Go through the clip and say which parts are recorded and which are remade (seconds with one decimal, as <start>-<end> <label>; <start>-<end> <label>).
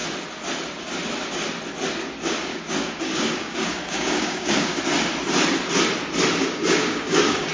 0.0-2.5 recorded; 2.5-4.8 remade; 4.8-6.4 recorded; 6.4-7.5 remade